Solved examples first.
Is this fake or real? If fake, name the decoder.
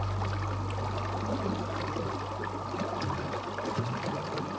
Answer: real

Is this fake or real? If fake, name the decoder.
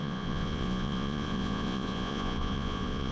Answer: fake, vocoder, Vocos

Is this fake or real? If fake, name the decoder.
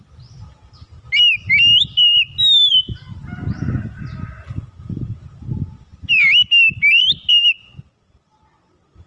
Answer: real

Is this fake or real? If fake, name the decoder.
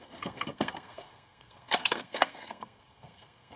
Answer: fake, codec, SNAC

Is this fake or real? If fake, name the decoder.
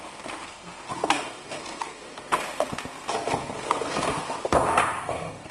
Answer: fake, codec, SNAC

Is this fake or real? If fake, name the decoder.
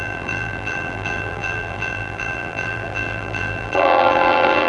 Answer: fake, vocoder, BigVGAN v2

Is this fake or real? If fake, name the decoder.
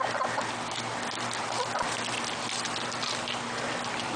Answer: real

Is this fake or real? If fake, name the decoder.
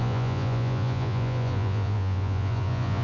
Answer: fake, vocoder, Vocos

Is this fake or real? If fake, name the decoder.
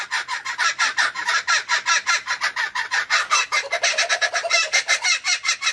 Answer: real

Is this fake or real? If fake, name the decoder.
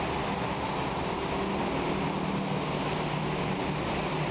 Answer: real